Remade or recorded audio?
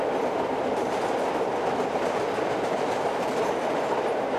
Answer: recorded